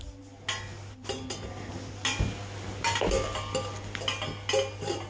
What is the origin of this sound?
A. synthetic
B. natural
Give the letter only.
B